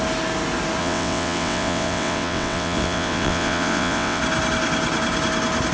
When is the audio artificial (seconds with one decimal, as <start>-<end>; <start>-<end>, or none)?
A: 0.8-4.2